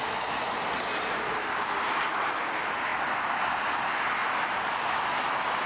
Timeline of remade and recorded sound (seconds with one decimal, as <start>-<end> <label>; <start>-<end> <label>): 0.0-5.7 recorded